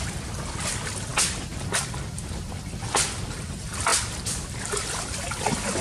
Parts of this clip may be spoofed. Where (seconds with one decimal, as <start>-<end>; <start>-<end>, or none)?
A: none